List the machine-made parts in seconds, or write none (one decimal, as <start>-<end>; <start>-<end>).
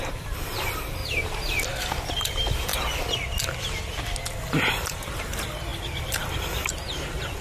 0.0-1.0; 2.2-2.7; 4.7-7.4